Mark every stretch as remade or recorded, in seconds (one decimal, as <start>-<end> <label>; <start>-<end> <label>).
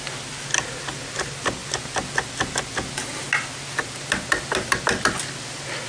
0.0-5.9 recorded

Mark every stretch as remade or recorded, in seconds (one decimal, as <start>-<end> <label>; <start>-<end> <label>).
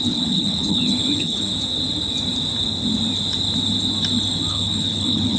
0.0-1.5 remade; 1.5-4.5 recorded; 4.5-5.4 remade